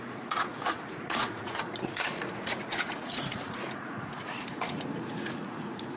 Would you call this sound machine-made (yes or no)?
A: yes